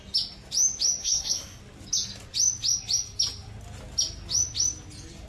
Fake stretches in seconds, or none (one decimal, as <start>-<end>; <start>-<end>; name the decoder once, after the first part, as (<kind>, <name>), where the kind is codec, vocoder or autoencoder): 1.0-1.6 (codec, SNAC)